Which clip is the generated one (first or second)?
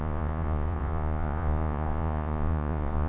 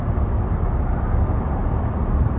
first